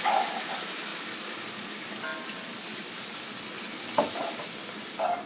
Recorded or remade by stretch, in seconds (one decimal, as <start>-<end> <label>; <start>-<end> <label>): 0.0-5.3 recorded